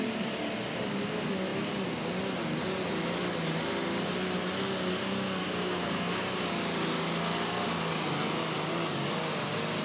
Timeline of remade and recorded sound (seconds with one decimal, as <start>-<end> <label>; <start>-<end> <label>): 0.0-5.4 recorded; 5.4-6.5 remade; 6.5-9.8 recorded